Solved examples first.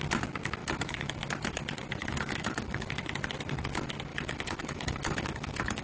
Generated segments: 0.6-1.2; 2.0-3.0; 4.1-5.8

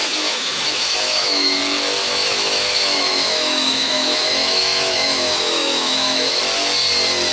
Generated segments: 0.0-1.6; 2.0-6.4

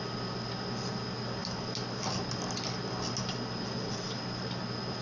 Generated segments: none

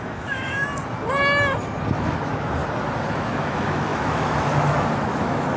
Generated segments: 0.0-0.7; 2.0-2.6; 3.1-5.6

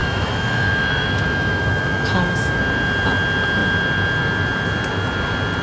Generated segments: 0.0-2.6

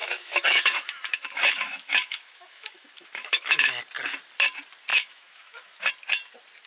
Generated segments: 0.0-3.8; 4.9-5.9